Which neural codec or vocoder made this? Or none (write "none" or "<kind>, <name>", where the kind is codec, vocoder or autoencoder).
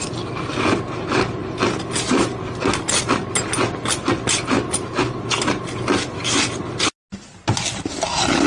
none